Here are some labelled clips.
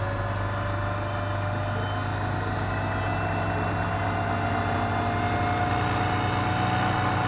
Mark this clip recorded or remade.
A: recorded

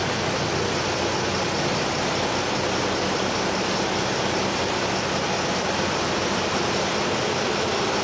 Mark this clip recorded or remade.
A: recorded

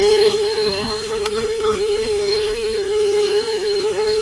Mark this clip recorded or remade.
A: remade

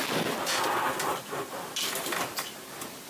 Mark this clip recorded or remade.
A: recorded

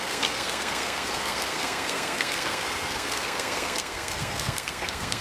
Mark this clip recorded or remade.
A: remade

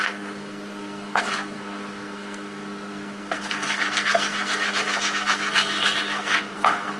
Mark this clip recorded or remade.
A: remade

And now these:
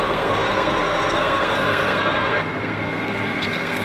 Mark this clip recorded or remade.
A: remade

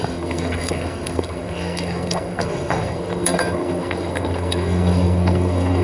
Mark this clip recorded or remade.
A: remade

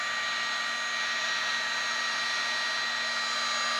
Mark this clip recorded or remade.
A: recorded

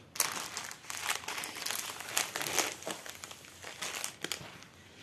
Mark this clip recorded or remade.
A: recorded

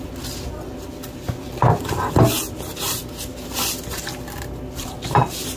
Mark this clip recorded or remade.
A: recorded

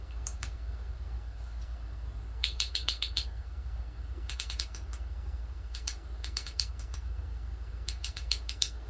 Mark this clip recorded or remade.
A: remade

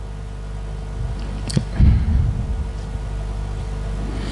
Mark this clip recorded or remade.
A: recorded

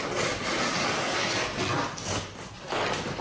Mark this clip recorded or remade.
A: recorded